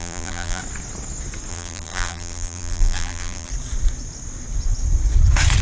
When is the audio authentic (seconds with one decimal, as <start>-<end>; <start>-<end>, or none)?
0.6-1.5; 3.5-5.6